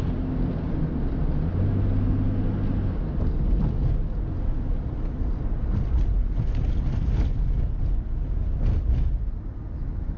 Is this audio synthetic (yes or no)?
no